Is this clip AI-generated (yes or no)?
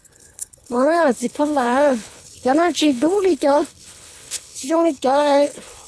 yes